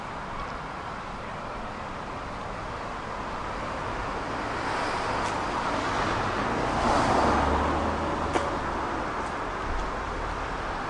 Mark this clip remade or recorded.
recorded